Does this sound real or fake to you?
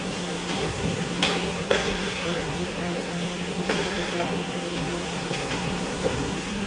fake